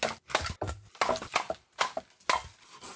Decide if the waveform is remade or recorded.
recorded